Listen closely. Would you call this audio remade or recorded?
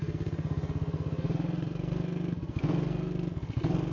remade